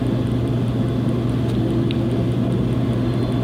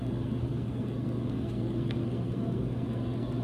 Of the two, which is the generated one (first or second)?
second